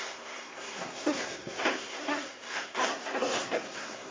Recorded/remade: remade